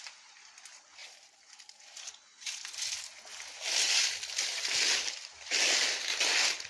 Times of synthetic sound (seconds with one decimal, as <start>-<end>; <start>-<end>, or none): none